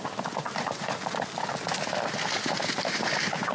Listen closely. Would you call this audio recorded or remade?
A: recorded